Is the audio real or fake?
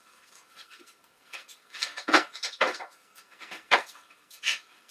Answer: fake